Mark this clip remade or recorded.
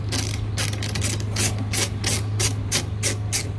recorded